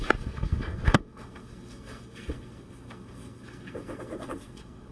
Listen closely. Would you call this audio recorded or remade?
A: remade